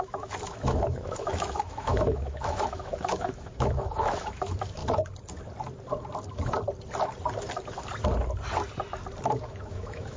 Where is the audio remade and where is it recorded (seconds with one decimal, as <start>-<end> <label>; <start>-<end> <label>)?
0.0-4.8 remade; 4.8-9.4 recorded; 9.4-10.2 remade